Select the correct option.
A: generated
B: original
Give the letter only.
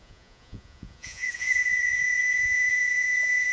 A